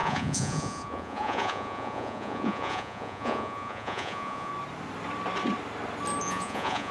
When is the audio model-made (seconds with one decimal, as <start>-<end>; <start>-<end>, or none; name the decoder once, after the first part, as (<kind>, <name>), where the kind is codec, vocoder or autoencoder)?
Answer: 0.0-4.5 (vocoder, Vocos); 6.2-6.9